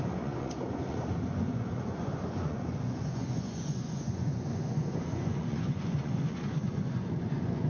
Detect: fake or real fake